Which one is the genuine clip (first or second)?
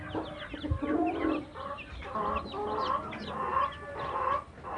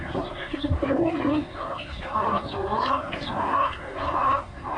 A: first